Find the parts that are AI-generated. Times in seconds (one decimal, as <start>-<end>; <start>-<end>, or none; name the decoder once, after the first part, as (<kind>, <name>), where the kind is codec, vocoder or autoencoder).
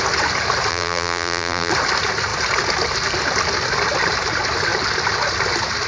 0.7-1.7 (vocoder, BigVGAN v2)